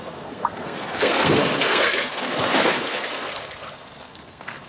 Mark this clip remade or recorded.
remade